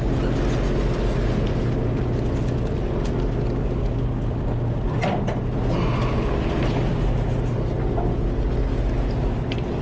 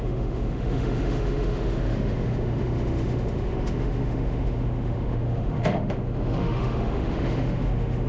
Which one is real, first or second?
first